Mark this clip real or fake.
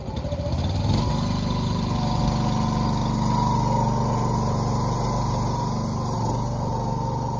real